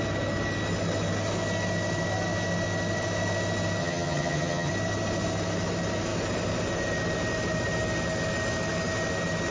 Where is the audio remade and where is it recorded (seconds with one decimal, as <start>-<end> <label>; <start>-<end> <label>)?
0.0-3.8 recorded; 3.8-4.7 remade; 4.7-9.5 recorded